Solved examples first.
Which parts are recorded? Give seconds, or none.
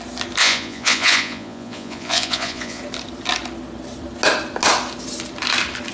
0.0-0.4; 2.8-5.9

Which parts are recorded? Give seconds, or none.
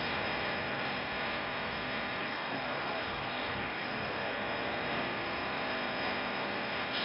0.0-2.2; 4.4-7.0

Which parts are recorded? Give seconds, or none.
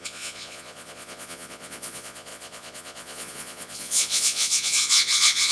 none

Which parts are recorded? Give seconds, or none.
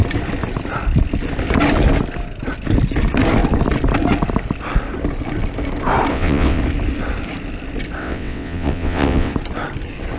0.0-6.1; 6.6-8.0; 9.3-10.2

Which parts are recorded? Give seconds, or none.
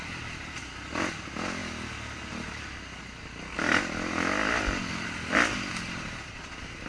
0.0-6.9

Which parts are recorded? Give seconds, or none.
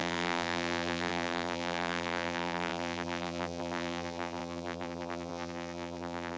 none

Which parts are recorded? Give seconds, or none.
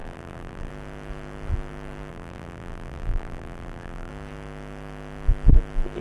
0.7-2.1; 4.1-6.0